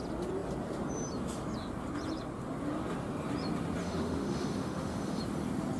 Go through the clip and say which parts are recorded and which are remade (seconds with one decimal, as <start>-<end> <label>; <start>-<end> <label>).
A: 0.0-3.8 recorded; 3.8-5.2 remade; 5.2-5.8 recorded